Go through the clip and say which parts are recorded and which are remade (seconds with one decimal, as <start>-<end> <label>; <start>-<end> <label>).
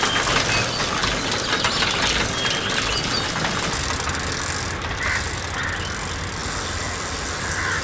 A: 0.0-7.8 recorded